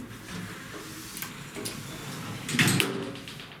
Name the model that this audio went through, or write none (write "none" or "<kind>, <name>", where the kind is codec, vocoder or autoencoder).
none